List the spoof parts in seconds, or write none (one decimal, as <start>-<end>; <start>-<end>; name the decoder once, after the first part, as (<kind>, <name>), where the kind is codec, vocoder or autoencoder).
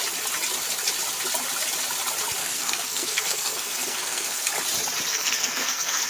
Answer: 2.4-4.5 (codec, SNAC); 5.1-6.1